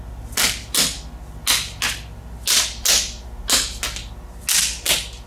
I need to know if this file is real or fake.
real